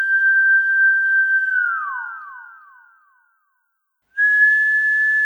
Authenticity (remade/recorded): recorded